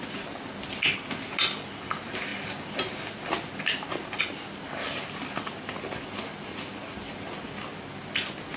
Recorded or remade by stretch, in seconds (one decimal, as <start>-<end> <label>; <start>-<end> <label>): 0.0-8.6 recorded

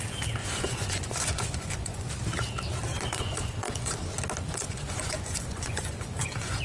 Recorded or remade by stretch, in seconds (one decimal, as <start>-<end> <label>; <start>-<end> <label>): 0.0-0.4 recorded; 0.4-2.1 remade; 2.1-2.9 recorded; 2.9-4.0 remade; 4.0-4.5 recorded; 4.5-6.6 remade

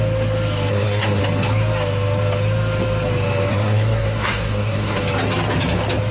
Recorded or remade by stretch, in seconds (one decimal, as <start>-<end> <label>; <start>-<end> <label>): 0.0-0.7 recorded; 0.7-1.2 remade; 1.2-3.5 recorded; 3.5-5.0 remade; 5.0-6.1 recorded

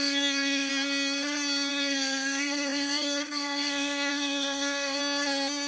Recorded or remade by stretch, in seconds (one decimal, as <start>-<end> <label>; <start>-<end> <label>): 0.0-0.7 remade; 0.7-1.7 recorded; 1.7-5.0 remade; 5.0-5.7 recorded

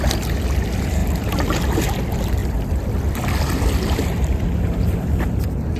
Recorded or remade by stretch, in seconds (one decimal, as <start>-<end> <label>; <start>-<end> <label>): 0.0-5.8 recorded